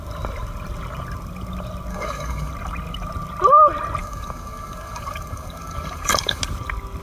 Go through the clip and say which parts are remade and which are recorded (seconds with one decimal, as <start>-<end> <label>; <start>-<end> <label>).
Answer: 0.0-1.9 recorded; 1.9-2.5 remade; 2.5-4.0 recorded; 4.0-6.4 remade; 6.4-7.0 recorded